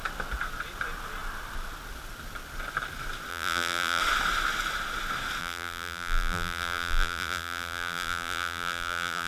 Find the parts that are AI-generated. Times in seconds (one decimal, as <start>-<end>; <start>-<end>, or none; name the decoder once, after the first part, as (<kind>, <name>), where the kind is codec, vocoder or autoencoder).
3.3-4.0 (vocoder, BigVGAN v2); 5.4-9.3